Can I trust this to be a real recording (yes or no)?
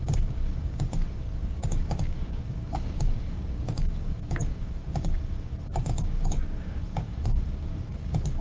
no